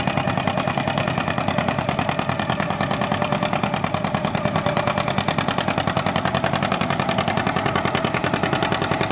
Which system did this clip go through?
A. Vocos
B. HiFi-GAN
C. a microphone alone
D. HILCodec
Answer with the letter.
C